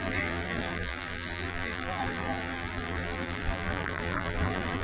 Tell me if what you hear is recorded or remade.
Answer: remade